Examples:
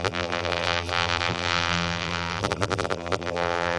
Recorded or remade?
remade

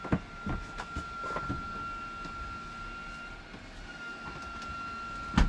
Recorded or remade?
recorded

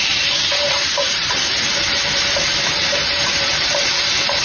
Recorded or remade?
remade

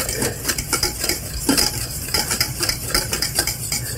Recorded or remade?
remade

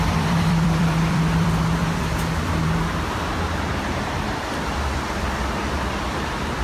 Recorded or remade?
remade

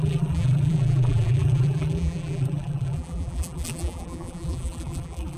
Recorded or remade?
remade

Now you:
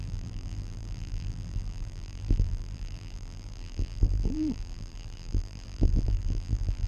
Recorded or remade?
remade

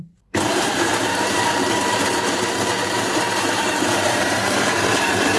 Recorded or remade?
remade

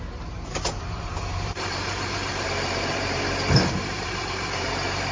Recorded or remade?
remade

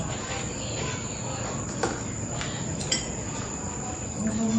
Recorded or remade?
recorded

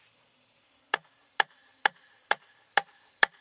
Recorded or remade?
remade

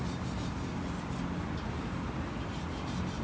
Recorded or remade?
recorded